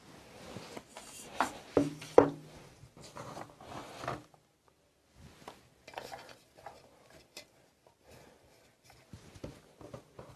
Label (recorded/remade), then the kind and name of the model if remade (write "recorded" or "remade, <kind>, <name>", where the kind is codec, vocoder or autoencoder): recorded